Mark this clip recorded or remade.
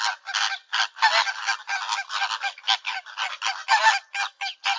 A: recorded